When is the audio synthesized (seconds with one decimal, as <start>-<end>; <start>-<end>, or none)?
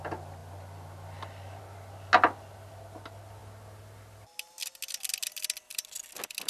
none